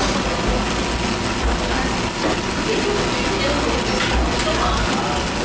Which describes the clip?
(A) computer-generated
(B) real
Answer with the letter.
B